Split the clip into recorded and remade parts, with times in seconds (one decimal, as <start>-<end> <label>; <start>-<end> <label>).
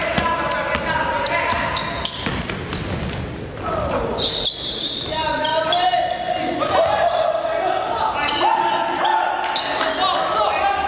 0.0-10.9 recorded